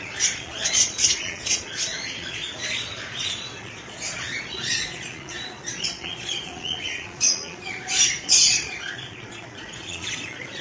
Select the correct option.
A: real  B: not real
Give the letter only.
B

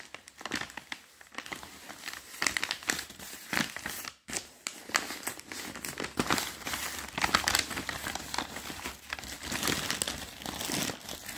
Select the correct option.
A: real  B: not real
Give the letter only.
A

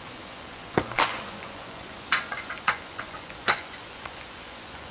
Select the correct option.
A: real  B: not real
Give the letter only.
B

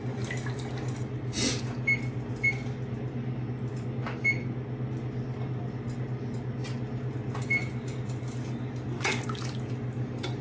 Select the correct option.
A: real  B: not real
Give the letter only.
A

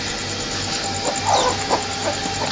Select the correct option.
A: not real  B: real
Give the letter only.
B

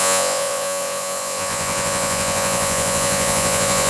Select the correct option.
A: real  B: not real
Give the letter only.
B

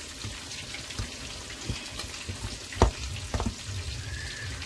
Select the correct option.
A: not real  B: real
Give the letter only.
B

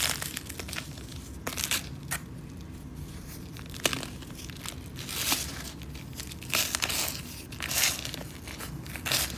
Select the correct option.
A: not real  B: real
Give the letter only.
B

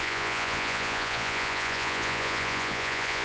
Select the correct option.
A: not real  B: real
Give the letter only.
A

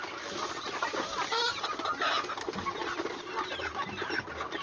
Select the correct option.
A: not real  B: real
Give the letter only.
B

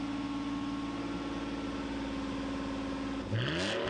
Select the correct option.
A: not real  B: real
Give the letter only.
B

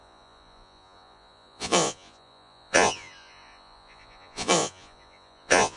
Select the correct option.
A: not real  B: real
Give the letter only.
A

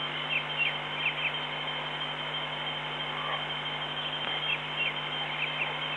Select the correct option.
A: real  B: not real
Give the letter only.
A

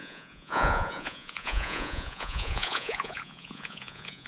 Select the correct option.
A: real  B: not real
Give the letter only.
B